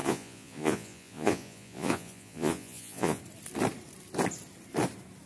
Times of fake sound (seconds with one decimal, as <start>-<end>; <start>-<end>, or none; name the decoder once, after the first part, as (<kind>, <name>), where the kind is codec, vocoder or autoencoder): 0.0-3.2 (vocoder, Vocos)